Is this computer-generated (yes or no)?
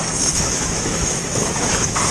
yes